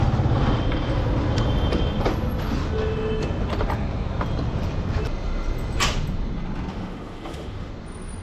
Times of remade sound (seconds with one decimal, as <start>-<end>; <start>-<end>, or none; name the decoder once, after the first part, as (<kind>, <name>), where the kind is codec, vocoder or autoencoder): 6.7-7.7 (autoencoder, DAC-VAE)